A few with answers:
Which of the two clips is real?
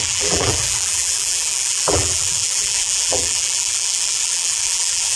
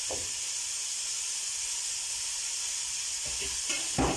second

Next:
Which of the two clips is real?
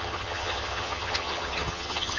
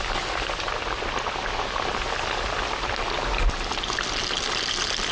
second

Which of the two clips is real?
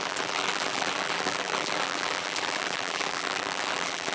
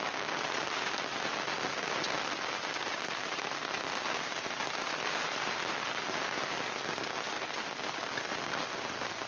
second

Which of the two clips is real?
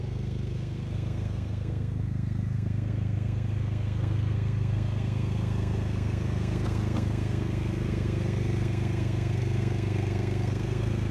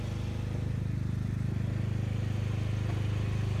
second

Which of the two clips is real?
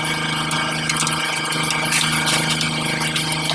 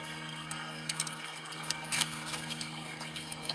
first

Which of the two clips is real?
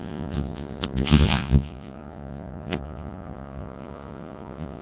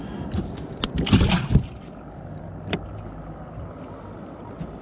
second